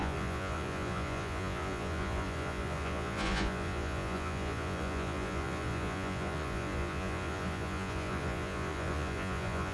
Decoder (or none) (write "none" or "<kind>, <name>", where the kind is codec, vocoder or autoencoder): vocoder, Vocos